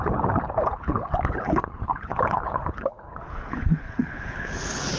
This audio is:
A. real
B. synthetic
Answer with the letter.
B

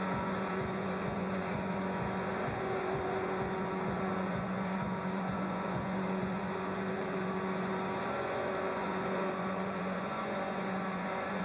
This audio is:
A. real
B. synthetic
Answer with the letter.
B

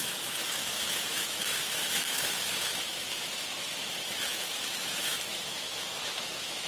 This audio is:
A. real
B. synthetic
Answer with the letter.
B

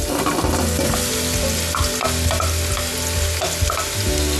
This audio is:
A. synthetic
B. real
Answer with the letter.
B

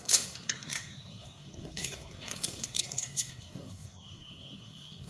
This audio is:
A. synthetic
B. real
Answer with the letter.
A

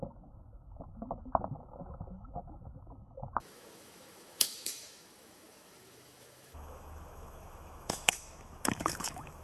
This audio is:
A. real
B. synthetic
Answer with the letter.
B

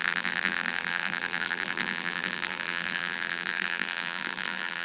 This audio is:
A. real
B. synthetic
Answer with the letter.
B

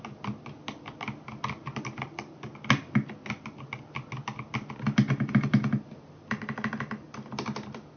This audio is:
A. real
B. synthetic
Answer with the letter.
A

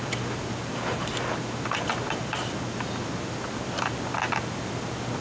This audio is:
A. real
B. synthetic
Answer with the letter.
A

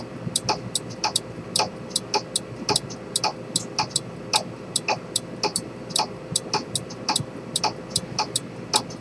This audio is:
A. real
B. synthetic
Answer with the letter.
A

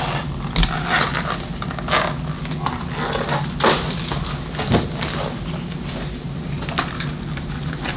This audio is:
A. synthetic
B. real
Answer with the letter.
B